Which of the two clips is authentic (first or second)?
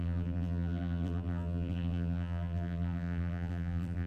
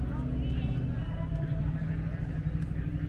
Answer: second